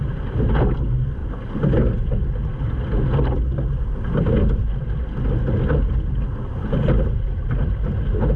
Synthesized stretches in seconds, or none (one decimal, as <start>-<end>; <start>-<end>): none